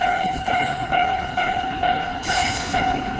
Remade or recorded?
remade